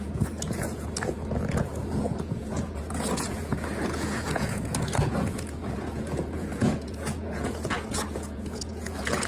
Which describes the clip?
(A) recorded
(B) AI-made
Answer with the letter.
B